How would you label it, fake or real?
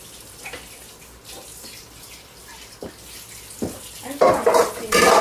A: real